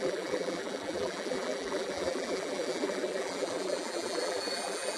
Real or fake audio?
fake